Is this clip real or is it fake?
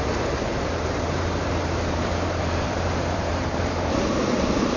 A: fake